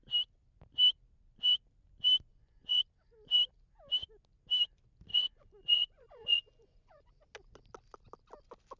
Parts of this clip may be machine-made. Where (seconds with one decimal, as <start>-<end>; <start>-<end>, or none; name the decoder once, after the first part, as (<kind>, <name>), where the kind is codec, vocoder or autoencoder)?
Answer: 2.3-2.8 (vocoder, Vocos); 5.1-7.1